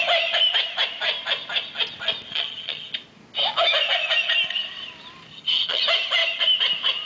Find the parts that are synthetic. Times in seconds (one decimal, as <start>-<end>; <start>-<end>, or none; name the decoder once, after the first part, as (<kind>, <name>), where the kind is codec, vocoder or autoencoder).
2.3-2.9 (vocoder, HiFi-GAN); 5.3-5.8